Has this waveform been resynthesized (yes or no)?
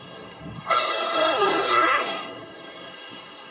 yes